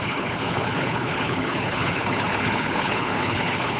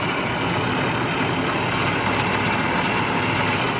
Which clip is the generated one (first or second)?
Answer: first